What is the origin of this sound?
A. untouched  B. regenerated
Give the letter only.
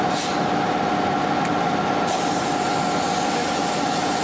A